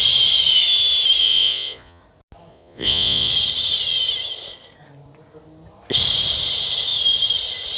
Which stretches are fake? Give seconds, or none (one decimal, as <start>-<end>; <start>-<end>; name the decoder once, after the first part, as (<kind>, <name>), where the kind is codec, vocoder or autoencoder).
1.2-2.0 (vocoder, Vocos); 2.5-3.3